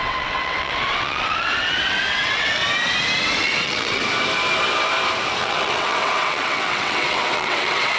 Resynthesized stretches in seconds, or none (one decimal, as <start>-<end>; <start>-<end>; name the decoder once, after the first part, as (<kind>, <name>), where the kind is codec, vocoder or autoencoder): 0.0-2.6 (vocoder, WaveNeXt); 3.2-4.0; 5.4-8.0

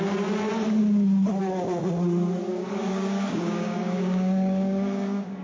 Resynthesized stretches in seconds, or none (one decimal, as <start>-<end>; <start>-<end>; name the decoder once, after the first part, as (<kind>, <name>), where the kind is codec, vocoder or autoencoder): 2.4-5.4 (codec, DAC)

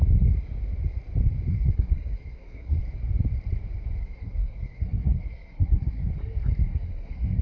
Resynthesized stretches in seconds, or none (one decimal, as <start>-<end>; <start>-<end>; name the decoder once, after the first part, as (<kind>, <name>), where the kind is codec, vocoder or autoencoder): 1.5-2.8 (codec, SNAC); 4.0-6.1; 6.7-7.4

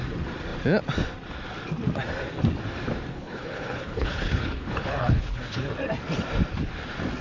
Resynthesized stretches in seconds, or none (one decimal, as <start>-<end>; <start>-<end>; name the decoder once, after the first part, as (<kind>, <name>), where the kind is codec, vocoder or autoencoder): 3.1-5.7 (codec, HILCodec)

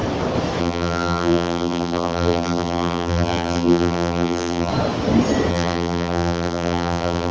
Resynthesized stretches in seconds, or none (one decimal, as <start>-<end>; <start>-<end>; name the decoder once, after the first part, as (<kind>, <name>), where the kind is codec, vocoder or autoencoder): 0.6-4.7 (vocoder, BigVGAN v2); 5.5-7.3